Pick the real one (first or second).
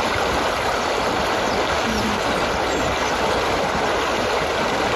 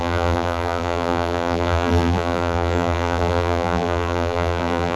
first